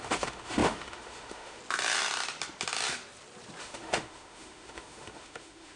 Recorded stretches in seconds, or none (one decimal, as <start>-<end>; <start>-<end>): 1.6-3.6